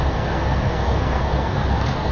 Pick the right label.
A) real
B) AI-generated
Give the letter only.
B